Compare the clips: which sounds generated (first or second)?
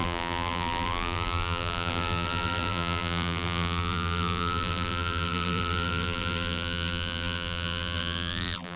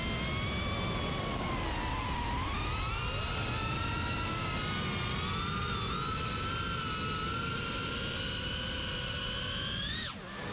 first